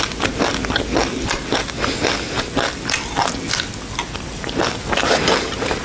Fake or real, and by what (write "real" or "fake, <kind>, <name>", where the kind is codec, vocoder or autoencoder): real